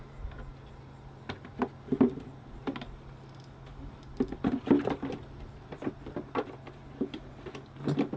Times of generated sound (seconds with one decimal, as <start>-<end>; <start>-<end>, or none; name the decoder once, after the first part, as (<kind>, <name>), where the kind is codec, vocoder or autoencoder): 1.6-2.7 (vocoder, BigVGAN v2); 3.7-7.3